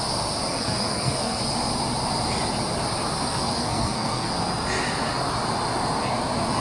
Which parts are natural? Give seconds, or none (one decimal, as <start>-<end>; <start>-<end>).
0.0-0.5; 1.4-3.3; 4.3-6.6